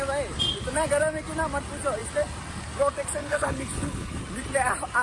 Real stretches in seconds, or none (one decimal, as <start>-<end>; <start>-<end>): 0.0-3.2; 4.2-5.0